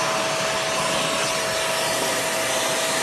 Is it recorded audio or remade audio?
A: recorded